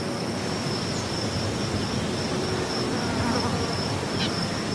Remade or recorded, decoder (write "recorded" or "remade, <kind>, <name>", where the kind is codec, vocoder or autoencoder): recorded